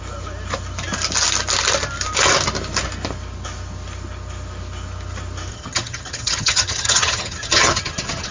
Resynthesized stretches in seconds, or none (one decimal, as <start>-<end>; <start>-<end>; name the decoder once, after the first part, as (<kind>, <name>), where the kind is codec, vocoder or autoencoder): 5.5-8.3 (vocoder, HiFi-GAN)

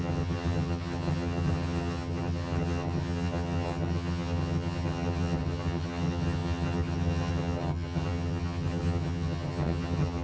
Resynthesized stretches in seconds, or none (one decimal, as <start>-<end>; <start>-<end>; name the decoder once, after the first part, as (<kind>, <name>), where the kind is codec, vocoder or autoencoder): 0.0-10.2 (vocoder, HiFi-GAN)

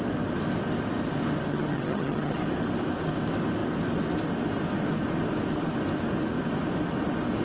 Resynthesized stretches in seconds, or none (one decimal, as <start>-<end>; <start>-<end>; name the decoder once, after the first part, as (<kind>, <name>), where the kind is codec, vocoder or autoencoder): 1.5-2.4 (vocoder, HiFi-GAN)

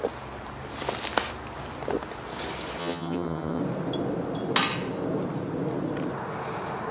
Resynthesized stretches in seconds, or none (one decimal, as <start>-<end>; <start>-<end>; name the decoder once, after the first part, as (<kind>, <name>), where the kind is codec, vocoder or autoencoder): 2.8-3.6 (vocoder, HiFi-GAN)

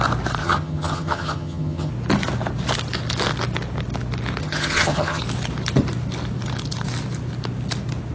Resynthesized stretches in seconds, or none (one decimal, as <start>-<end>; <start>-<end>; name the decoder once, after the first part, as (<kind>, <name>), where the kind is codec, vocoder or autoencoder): 0.4-1.9 (vocoder, HiFi-GAN); 4.4-5.2